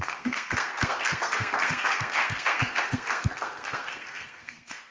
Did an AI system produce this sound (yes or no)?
yes